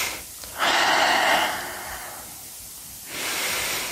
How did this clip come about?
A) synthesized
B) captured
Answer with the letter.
B